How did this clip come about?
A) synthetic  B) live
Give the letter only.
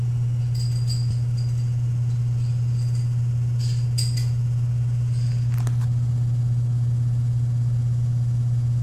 B